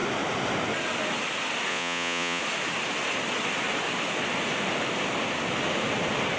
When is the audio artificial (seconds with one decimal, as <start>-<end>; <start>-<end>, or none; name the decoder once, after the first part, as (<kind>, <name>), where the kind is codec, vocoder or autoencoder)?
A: 1.7-2.4 (vocoder, Vocos)